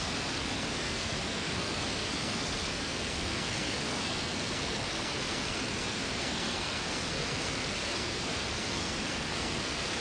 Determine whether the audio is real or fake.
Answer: fake